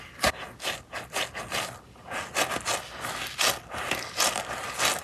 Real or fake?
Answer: real